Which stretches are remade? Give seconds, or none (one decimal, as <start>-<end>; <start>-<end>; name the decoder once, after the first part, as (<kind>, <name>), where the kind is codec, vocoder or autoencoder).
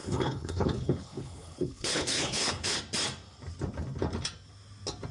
0.0-2.8 (codec, HILCodec)